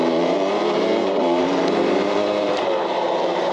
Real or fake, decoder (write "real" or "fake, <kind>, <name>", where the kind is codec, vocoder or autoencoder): fake, vocoder, BigVGAN v2